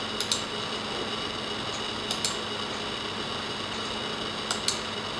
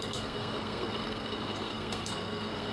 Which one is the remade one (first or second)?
second